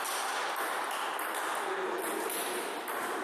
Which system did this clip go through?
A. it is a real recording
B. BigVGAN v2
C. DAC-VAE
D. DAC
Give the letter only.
A